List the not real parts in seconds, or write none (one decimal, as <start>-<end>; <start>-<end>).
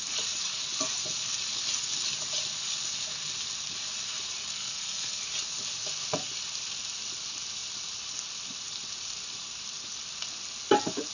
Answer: 4.5-5.2